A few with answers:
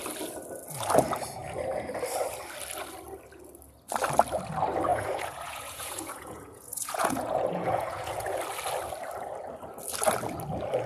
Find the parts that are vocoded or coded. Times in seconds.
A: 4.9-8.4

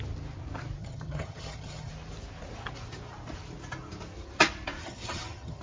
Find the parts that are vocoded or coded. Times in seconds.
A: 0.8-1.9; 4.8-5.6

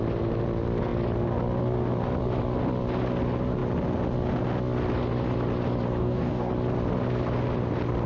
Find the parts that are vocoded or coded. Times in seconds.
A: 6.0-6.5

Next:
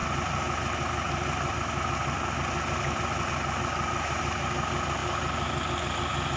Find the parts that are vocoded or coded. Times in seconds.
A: none